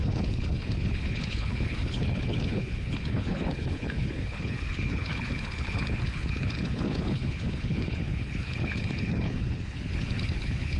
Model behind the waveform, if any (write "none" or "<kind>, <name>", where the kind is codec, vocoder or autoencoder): codec, HILCodec